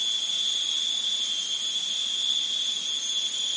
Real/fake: real